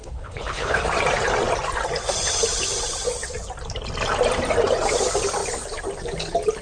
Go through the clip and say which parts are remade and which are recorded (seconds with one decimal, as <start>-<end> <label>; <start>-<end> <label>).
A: 0.0-0.8 remade; 0.8-6.6 recorded